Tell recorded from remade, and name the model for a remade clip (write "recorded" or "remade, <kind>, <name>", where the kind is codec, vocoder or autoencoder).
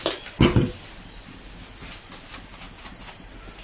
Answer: recorded